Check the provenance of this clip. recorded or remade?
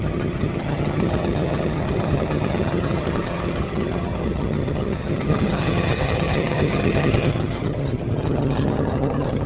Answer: remade